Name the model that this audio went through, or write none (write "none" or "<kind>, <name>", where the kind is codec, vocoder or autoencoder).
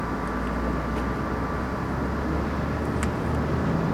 none